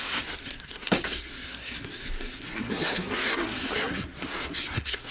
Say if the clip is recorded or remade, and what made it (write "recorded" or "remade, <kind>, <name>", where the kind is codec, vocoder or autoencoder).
remade, codec, SNAC